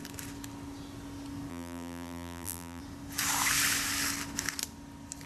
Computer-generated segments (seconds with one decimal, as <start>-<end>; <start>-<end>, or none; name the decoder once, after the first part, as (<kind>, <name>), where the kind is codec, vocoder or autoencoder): 1.5-2.8 (vocoder, BigVGAN v2)

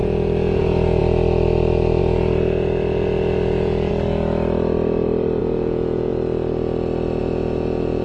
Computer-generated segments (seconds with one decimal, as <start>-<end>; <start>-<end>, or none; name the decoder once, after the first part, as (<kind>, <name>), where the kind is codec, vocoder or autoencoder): 0.0-1.0 (vocoder, Vocos); 2.0-3.9; 5.4-6.1; 7.2-8.0

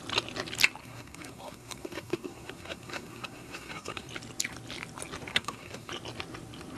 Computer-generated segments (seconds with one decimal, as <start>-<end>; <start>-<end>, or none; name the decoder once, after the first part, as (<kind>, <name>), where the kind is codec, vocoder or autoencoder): 0.8-4.1 (codec, SNAC); 5.3-5.9